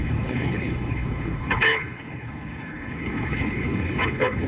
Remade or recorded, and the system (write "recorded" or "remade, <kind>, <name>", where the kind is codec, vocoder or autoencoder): remade, codec, HILCodec